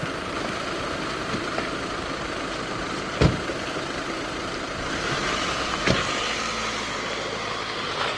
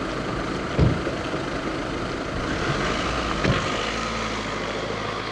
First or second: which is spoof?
first